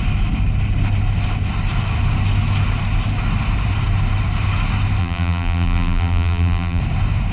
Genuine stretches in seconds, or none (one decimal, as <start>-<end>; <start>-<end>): 0.0-5.0; 6.8-7.3